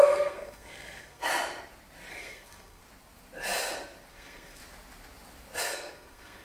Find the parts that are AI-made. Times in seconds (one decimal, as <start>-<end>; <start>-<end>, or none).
0.0-1.3; 2.1-2.8; 4.1-4.6; 5.6-6.4